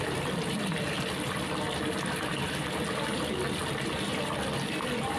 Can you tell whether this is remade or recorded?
recorded